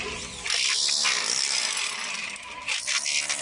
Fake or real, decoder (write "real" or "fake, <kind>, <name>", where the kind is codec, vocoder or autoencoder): real